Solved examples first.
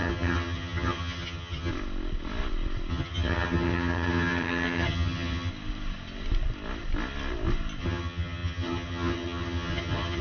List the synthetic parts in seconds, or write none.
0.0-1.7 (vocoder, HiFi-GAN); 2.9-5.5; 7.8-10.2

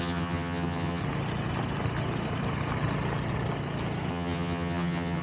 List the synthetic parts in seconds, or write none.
0.0-1.0 (vocoder, HiFi-GAN); 4.1-5.2

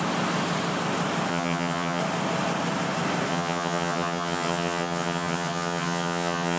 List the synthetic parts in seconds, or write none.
1.3-2.0 (vocoder, HiFi-GAN); 3.3-6.6

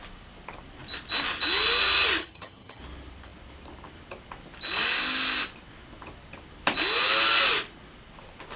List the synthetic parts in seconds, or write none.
2.2-2.8 (vocoder, HiFi-GAN)